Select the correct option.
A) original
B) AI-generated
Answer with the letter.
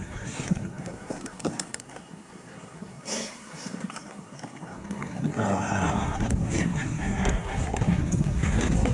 B